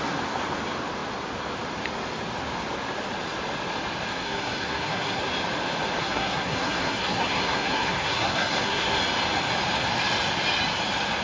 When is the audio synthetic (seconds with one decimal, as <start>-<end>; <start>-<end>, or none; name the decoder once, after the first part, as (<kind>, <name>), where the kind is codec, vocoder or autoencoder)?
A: 4.1-5.2 (codec, SNAC); 6.0-9.0